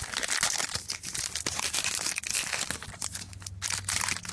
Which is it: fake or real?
real